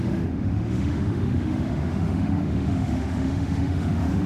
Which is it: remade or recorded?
remade